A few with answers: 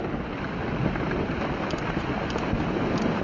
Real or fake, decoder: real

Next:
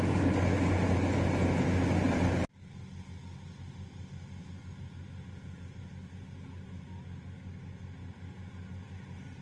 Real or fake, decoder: real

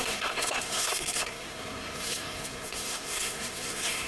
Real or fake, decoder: fake, codec, SNAC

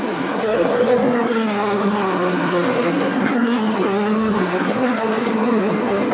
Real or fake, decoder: fake, codec, SNAC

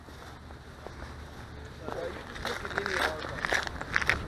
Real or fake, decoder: real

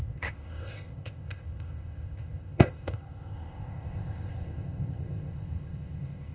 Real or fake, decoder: fake, codec, ZipCodec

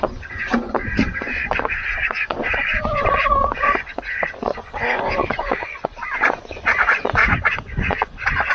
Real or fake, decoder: fake, vocoder, Vocos